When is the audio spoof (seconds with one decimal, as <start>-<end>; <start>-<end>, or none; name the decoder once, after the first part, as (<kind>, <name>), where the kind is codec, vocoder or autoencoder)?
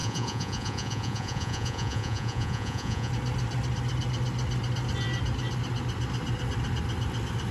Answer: 0.0-3.1 (vocoder, Vocos)